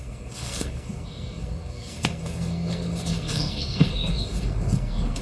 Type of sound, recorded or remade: remade